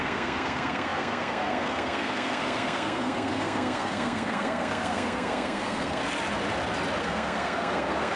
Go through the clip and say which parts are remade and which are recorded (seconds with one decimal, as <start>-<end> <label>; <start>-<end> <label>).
0.0-6.0 remade; 6.0-7.0 recorded; 7.0-8.2 remade